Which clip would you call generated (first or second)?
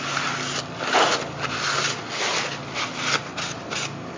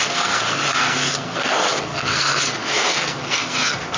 second